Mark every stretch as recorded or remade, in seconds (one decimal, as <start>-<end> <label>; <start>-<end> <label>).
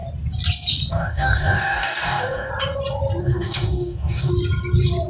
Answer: 0.0-0.9 recorded; 0.9-2.5 remade; 2.5-3.2 recorded; 3.2-4.3 remade; 4.3-5.1 recorded